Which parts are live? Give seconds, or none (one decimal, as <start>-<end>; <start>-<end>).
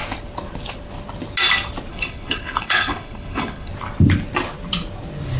0.0-1.9; 3.7-5.4